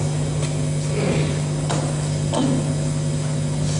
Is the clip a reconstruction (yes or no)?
no